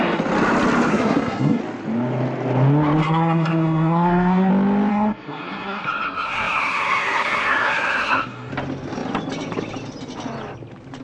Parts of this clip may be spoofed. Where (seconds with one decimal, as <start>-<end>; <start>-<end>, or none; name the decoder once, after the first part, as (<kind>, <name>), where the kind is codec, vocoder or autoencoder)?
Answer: 0.9-1.6 (codec, SNAC); 3.0-4.5; 4.9-8.5